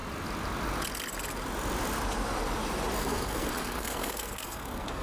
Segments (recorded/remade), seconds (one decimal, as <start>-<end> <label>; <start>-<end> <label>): 0.0-3.0 recorded; 3.0-5.0 remade

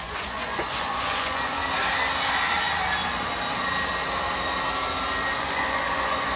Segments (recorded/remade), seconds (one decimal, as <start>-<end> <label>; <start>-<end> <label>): 0.0-1.6 remade; 1.6-5.4 recorded; 5.4-6.4 remade

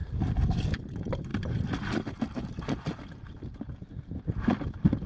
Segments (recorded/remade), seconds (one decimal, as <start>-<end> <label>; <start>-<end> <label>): 0.0-0.9 remade; 0.9-1.3 recorded; 1.3-3.3 remade; 3.3-5.1 recorded

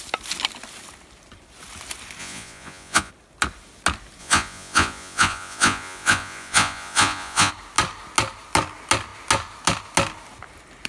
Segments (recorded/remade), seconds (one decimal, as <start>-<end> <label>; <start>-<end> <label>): 0.0-2.2 recorded; 2.2-3.1 remade; 3.1-4.2 recorded; 4.2-7.5 remade; 7.5-10.9 recorded